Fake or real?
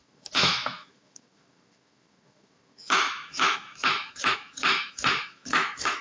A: fake